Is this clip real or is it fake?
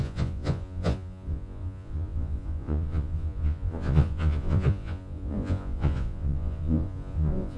fake